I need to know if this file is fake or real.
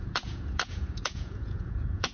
fake